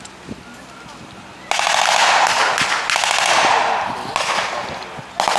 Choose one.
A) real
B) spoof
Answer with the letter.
A